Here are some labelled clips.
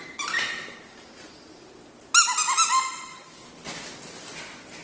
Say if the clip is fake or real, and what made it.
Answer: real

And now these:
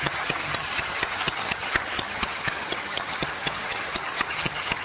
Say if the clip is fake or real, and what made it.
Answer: fake, vocoder, HiFi-GAN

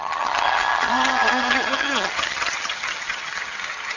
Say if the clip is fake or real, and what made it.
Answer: fake, vocoder, HiFi-GAN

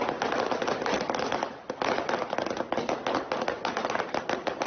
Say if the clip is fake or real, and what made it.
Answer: real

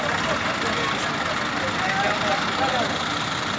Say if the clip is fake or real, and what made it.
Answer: real